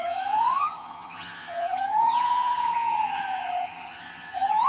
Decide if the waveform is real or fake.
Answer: fake